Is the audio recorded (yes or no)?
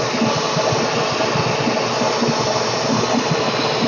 yes